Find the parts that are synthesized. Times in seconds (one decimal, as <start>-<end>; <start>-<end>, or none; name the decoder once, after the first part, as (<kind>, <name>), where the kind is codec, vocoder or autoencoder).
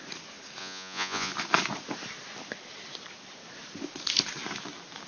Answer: 0.6-1.3 (vocoder, Vocos)